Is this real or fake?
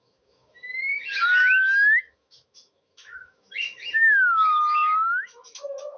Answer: fake